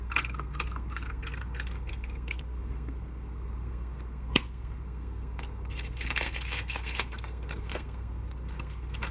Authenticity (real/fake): fake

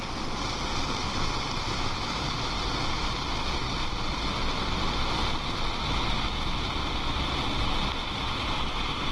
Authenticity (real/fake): real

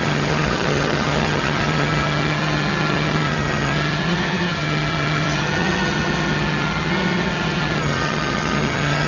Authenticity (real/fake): fake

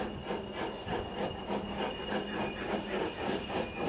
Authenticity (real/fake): real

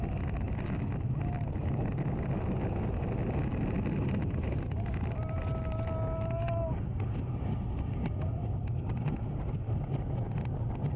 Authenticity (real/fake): real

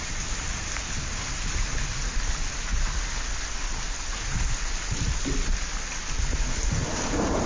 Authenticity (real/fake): real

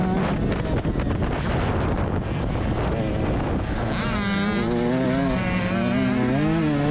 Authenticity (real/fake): real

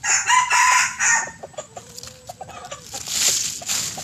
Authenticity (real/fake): real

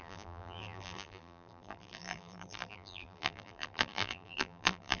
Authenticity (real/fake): fake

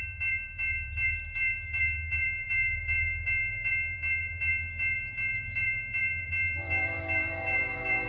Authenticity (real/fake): fake